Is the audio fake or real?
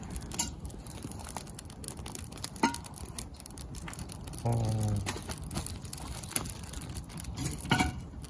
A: real